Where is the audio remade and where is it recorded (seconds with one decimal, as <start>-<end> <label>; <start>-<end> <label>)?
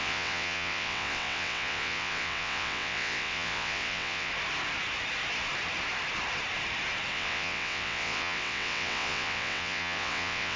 0.0-4.3 remade; 4.3-7.1 recorded; 7.1-10.6 remade